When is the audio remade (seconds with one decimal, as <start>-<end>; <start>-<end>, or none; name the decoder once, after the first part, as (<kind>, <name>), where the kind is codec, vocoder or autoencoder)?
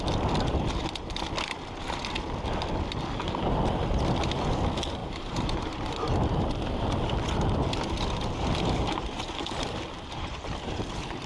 5.0-5.9 (vocoder, BigVGAN v2)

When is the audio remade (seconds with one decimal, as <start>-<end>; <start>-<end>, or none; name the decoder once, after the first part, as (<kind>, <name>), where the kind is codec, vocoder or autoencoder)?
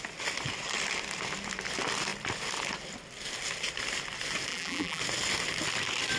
4.5-5.0 (vocoder, BigVGAN v2)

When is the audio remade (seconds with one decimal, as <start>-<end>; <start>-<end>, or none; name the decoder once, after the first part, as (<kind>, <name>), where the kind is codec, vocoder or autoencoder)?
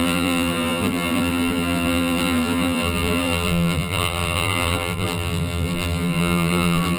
0.0-7.0 (vocoder, BigVGAN v2)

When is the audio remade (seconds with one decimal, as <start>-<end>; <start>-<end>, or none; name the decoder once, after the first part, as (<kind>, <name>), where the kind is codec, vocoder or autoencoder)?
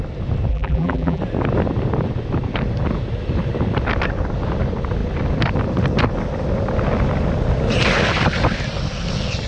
0.5-1.2 (vocoder, BigVGAN v2)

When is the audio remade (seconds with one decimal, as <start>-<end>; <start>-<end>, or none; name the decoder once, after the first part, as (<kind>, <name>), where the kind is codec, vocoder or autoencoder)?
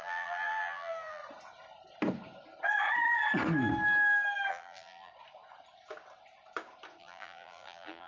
0.0-1.2 (vocoder, BigVGAN v2); 4.5-5.1; 7.0-8.1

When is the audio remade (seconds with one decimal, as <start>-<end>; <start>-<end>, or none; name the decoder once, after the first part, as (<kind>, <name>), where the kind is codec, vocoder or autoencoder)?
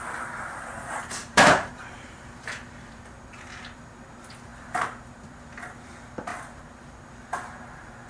1.2-3.0 (vocoder, BigVGAN v2)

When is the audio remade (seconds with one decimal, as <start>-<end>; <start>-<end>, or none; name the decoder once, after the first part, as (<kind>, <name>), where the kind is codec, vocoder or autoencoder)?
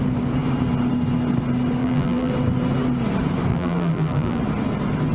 1.8-2.3 (vocoder, BigVGAN v2); 3.5-4.4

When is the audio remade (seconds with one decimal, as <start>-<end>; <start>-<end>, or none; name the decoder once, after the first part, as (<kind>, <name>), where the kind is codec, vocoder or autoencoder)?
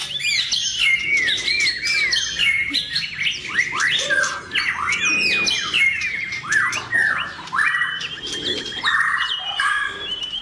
5.9-10.4 (vocoder, BigVGAN v2)